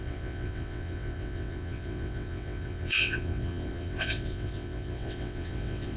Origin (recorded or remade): remade